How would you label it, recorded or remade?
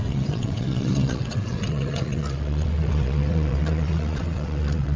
remade